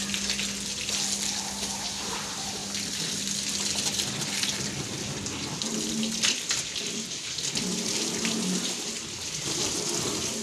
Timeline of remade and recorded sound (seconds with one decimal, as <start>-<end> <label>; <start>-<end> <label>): 0.0-10.4 recorded